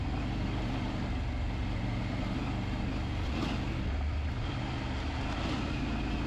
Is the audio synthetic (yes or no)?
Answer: no